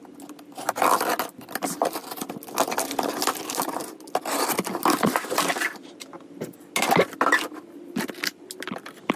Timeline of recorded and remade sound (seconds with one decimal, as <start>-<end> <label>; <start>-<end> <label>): 0.0-9.2 recorded